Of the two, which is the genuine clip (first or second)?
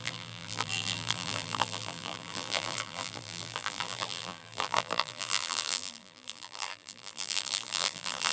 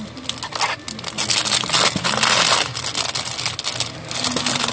second